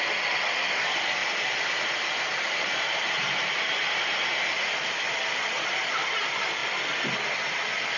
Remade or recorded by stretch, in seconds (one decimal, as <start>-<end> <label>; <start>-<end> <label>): 0.0-1.2 recorded; 1.2-5.1 remade; 5.1-8.0 recorded